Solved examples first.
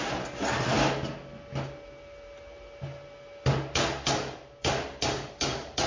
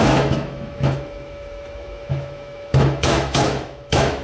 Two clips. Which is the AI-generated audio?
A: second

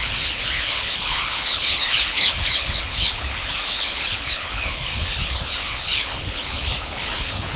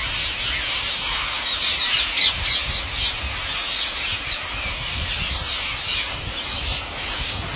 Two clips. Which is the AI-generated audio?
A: first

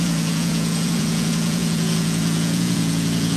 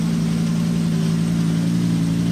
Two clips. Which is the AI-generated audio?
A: first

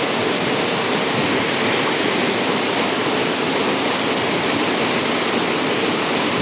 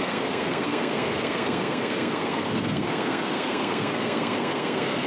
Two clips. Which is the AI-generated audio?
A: second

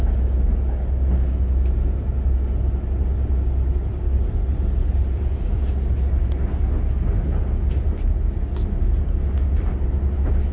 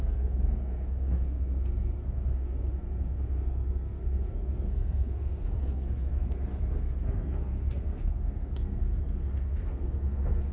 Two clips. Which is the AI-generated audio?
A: second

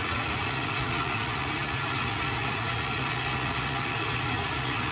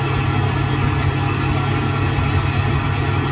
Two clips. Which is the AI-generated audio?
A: first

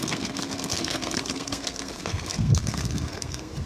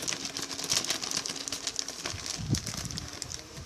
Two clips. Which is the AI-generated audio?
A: first